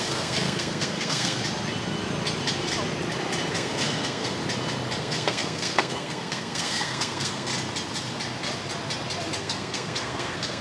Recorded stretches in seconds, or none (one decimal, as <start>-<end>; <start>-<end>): 1.4-3.5; 4.4-5.0; 7.5-9.4